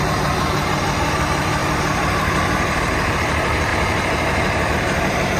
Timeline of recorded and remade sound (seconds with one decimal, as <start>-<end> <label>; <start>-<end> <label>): 0.0-5.4 remade